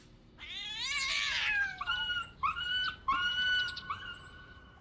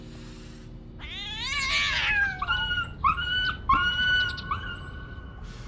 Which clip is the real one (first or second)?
second